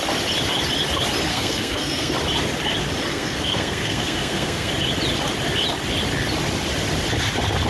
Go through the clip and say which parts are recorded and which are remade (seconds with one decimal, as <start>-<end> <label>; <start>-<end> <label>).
0.0-1.3 recorded; 1.3-2.1 remade; 2.1-3.1 recorded; 3.1-4.7 remade; 4.7-7.7 recorded